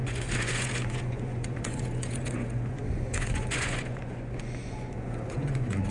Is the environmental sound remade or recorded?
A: remade